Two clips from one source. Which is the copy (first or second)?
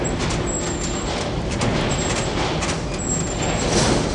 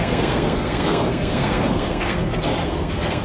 second